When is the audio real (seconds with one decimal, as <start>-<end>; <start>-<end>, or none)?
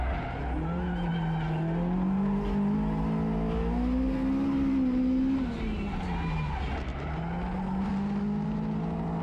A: 0.0-9.2